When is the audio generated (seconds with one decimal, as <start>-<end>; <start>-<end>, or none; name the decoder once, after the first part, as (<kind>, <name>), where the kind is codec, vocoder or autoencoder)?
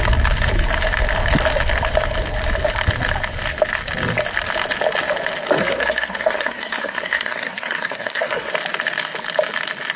5.6-8.5 (codec, SNAC)